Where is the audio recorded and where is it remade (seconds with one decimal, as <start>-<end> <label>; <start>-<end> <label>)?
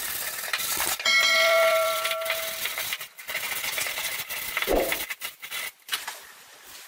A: 0.0-0.5 recorded; 0.5-3.1 remade; 3.1-4.1 recorded; 4.1-6.9 remade